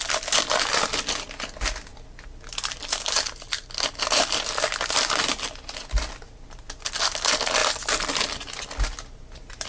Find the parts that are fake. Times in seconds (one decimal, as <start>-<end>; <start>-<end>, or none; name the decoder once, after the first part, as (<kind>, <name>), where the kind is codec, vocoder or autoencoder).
none